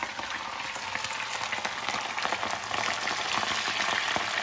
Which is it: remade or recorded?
recorded